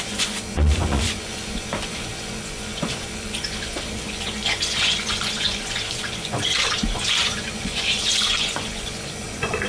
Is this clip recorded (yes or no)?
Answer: no